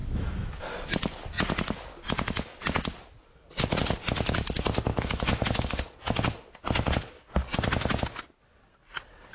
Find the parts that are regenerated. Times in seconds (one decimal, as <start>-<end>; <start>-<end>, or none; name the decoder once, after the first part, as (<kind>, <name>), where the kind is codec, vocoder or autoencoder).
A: 0.0-0.6 (autoencoder, DAC-VAE); 4.9-5.8